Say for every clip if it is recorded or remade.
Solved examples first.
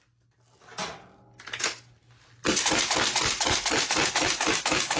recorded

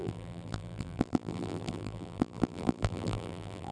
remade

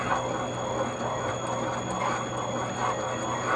recorded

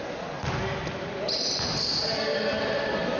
recorded